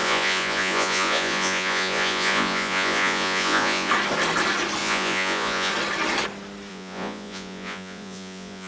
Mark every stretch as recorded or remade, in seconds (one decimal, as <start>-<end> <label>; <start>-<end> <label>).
0.0-3.9 remade; 3.9-4.8 recorded; 4.8-5.7 remade; 5.7-6.7 recorded; 6.7-8.7 remade